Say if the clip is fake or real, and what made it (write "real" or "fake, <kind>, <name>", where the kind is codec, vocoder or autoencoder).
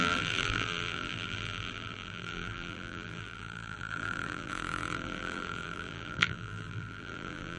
fake, vocoder, BigVGAN v2